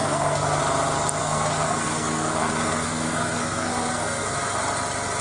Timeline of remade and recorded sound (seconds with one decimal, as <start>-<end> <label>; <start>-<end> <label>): 0.0-0.6 remade; 0.6-1.2 recorded; 1.2-4.3 remade; 4.3-5.2 recorded